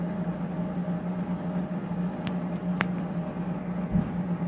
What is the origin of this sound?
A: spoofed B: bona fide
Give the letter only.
B